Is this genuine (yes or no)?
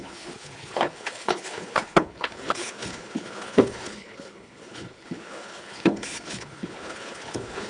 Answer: no